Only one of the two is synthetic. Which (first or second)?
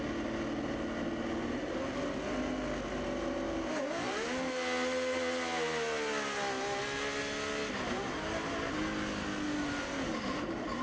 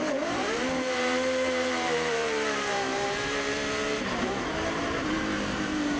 second